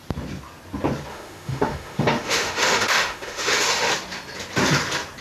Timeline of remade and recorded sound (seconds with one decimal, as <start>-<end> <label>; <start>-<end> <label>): 0.0-1.1 recorded; 1.1-3.9 remade; 3.9-5.2 recorded